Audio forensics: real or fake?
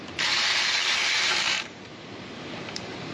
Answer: fake